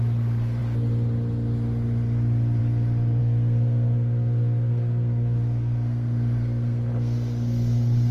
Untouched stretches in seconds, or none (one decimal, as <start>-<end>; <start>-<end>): 0.0-3.2